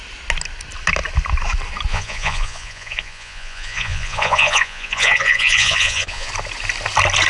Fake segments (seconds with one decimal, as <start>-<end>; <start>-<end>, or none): 1.9-6.3